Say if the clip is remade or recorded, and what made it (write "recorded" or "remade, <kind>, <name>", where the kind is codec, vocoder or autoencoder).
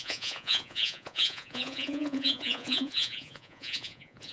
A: remade, vocoder, Vocos